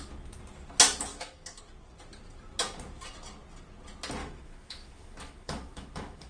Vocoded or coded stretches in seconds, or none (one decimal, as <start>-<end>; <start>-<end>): 1.1-1.6; 4.2-6.3

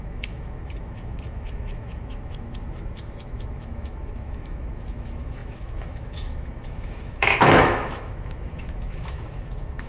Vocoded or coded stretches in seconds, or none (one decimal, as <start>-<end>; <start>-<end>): 0.0-9.9

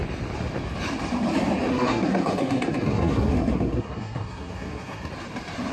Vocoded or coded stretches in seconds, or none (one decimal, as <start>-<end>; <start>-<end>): 1.7-5.1

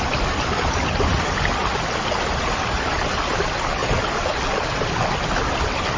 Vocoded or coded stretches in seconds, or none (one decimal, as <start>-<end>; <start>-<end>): none

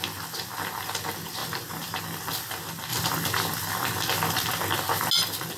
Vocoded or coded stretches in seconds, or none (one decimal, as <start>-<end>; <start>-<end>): 1.4-2.0